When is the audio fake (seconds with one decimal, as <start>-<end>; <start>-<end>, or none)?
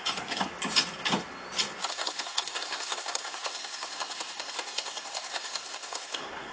0.0-0.5; 1.9-6.5